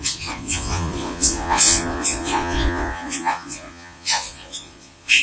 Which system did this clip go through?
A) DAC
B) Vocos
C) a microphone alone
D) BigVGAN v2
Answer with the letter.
B